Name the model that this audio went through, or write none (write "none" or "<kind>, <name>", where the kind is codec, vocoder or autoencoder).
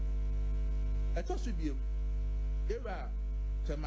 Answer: none